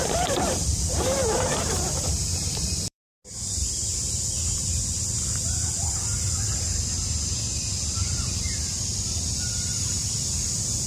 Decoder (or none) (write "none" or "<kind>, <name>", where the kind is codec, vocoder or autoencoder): vocoder, BigVGAN v2